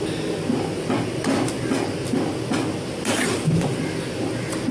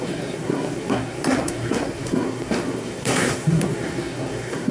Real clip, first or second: first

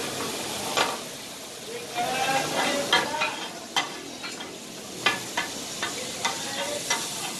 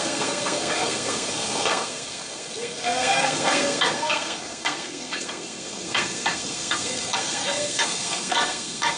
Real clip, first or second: first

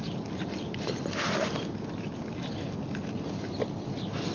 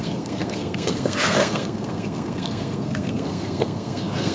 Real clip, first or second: first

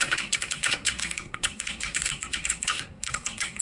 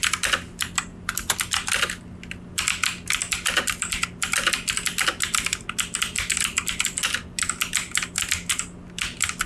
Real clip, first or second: second